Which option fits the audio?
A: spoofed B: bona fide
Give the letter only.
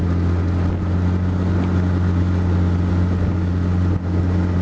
B